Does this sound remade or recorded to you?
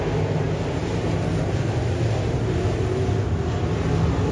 recorded